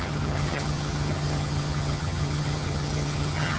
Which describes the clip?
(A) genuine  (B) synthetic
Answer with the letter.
B